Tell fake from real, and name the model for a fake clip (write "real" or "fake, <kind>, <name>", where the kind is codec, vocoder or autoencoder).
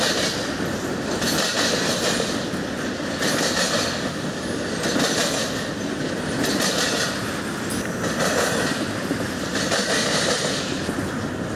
real